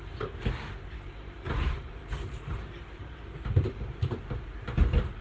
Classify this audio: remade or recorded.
remade